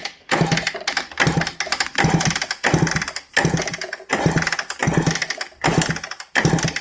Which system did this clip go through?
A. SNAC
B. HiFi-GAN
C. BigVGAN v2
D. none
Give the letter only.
D